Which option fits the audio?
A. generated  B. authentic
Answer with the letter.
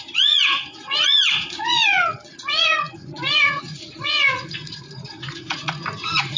A